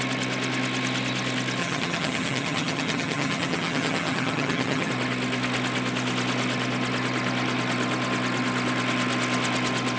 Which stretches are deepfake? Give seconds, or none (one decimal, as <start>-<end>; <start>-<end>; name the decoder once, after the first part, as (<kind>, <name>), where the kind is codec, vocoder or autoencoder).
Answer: 1.6-4.9 (vocoder, HiFi-GAN)